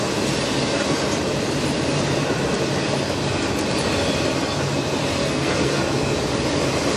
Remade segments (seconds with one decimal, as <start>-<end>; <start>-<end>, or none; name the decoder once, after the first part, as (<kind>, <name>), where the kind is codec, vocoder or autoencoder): 5.2-5.8 (codec, SNAC)